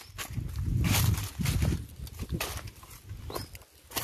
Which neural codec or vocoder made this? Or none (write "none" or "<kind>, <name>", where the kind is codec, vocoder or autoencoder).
none